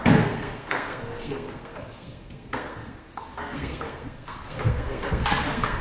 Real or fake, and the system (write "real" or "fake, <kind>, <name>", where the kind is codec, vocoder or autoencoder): fake, codec, SNAC